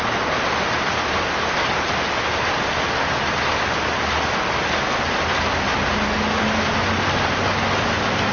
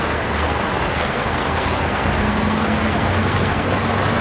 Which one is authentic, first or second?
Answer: first